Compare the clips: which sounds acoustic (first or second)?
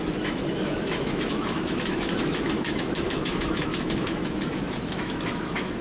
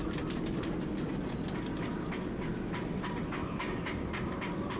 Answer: second